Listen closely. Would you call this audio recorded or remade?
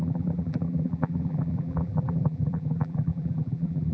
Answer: remade